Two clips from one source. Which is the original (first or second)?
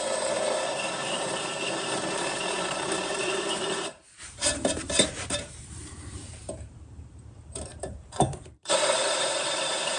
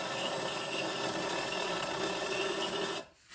second